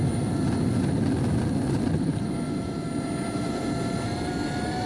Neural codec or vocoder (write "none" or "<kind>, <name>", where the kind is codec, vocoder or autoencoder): none